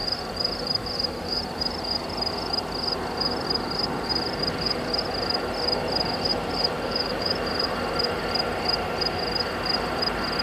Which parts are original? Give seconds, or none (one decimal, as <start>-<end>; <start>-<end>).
1.6-6.3; 7.7-10.4